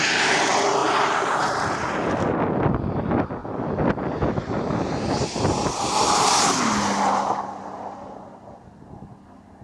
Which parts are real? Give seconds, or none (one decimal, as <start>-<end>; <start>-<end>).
0.0-0.8; 1.4-9.6